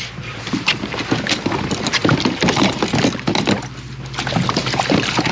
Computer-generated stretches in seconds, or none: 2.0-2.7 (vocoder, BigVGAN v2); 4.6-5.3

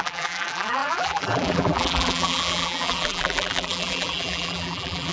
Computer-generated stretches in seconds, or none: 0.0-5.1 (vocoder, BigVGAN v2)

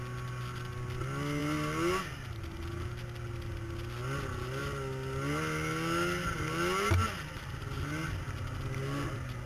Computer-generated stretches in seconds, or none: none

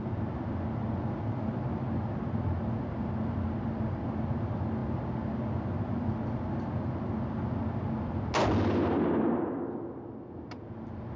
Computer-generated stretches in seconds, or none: none

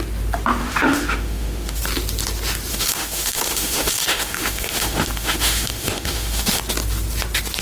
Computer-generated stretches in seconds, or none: 0.6-1.8 (autoencoder, DAC-VAE); 2.7-6.6